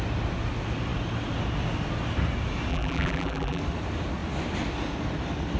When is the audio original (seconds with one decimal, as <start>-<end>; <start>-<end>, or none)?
0.0-2.7; 3.6-5.6